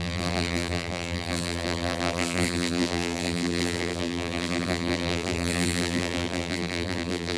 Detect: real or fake fake